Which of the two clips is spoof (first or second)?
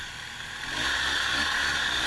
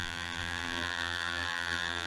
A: second